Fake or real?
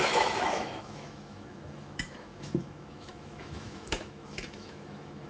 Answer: fake